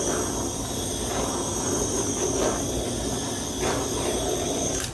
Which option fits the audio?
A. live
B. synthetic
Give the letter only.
A